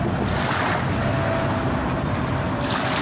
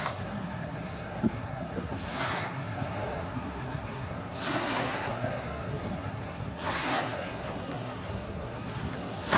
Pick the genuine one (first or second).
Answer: first